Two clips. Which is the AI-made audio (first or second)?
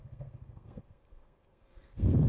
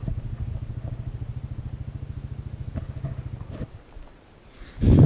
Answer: first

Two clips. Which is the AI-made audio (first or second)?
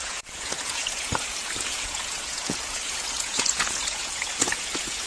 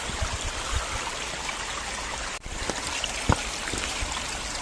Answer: first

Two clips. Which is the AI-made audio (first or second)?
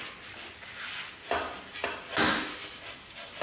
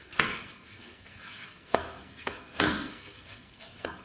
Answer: second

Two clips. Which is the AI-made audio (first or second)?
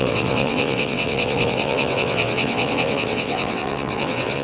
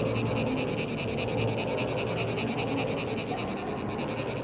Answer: first